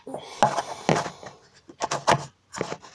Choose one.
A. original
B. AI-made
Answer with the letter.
A